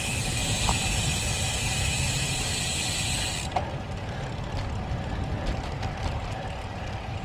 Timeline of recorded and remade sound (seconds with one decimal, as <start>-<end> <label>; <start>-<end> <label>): 0.0-7.2 recorded